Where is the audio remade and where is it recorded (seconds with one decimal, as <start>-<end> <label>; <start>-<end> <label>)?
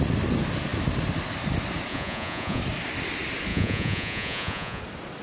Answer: 0.0-1.9 recorded; 1.9-2.6 remade; 2.6-3.5 recorded; 3.5-4.8 remade; 4.8-5.2 recorded